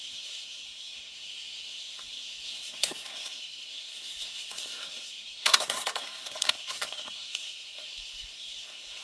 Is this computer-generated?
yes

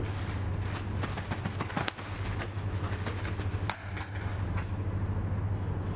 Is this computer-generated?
no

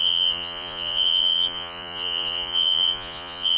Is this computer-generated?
yes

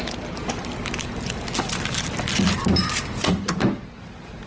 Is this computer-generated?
no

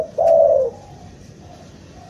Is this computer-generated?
no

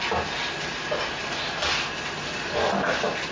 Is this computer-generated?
no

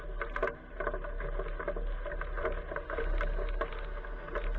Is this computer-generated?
no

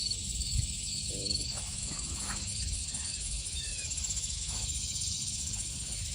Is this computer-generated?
yes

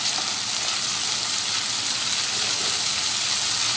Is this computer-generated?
no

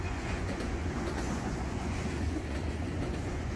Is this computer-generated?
yes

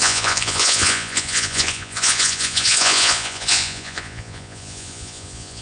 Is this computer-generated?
yes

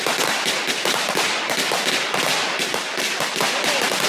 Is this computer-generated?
no